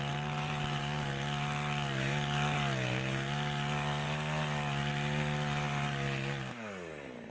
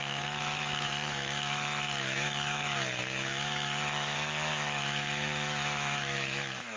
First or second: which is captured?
first